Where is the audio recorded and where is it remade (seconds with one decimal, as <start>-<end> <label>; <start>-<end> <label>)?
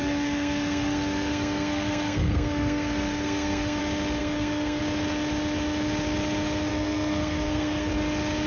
0.0-3.8 remade; 3.8-4.2 recorded; 4.2-4.8 remade; 4.8-6.7 recorded; 6.7-7.9 remade; 7.9-8.5 recorded